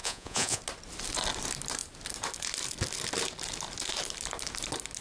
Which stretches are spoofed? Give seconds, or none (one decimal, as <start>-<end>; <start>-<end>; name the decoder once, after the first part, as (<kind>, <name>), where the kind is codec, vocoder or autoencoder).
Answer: 0.0-0.6 (vocoder, Vocos)